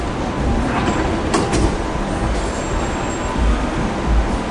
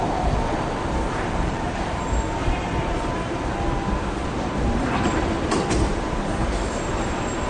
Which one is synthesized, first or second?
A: second